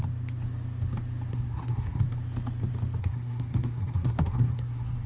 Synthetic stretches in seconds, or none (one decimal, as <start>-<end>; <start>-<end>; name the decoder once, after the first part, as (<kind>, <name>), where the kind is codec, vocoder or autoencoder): 1.3-2.0 (codec, SNAC); 3.0-5.1